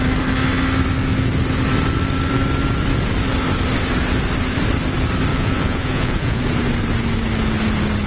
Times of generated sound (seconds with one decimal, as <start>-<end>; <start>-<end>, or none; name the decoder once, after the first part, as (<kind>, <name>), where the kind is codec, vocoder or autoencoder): 5.3-6.4 (vocoder, Vocos)